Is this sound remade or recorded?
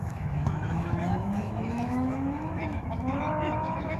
remade